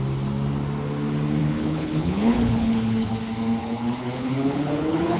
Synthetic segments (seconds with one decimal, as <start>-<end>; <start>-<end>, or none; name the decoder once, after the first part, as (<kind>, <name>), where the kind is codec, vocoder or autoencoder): 1.4-3.1 (codec, HILCodec); 3.6-5.2